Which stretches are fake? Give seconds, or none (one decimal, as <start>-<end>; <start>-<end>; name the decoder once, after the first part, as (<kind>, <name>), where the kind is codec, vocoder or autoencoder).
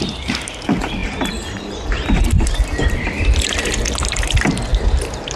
4.7-5.4 (vocoder, BigVGAN v2)